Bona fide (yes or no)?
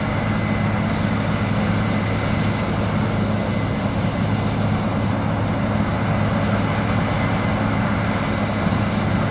yes